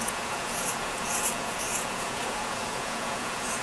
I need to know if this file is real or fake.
fake